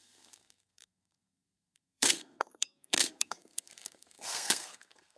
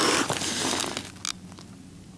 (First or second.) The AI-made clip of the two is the first